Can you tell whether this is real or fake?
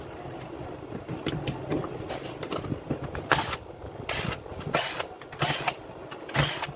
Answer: real